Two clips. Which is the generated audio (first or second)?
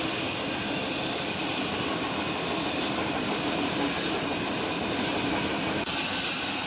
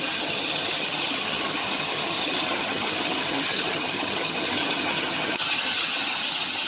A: second